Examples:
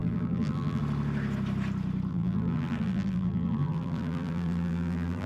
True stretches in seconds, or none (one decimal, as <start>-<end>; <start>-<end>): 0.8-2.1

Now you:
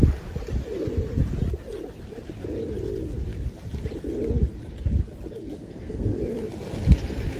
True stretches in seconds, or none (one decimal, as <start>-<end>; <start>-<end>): 0.0-5.4; 6.2-7.4

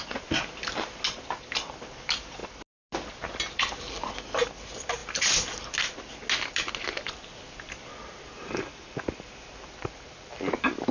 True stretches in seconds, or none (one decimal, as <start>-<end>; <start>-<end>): 0.0-10.9

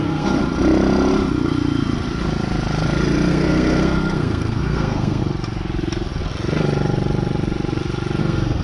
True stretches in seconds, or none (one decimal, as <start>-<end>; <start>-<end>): 0.4-3.3; 5.2-8.2